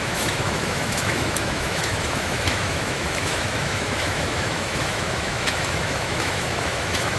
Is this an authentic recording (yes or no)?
no